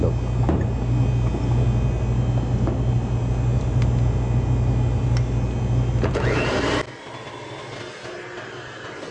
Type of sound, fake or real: real